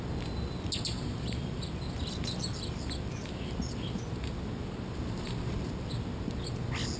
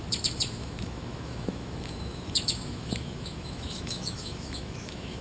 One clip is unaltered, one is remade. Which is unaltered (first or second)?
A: first